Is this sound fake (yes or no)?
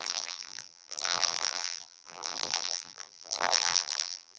yes